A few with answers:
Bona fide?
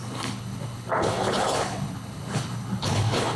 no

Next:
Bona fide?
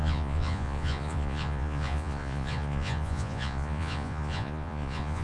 no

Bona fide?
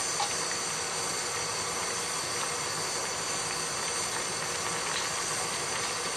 yes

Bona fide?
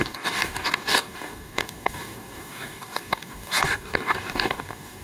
no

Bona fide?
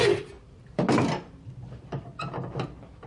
yes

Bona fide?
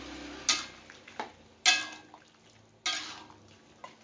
yes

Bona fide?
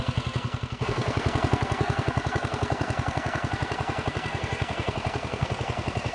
no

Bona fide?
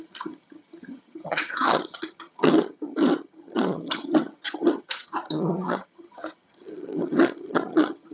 no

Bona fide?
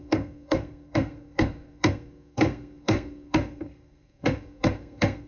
no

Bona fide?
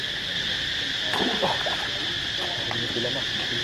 yes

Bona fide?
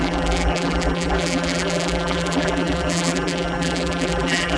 no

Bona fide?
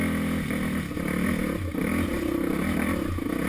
yes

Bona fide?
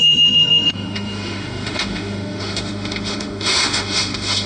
no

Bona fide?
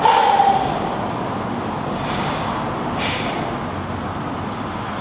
yes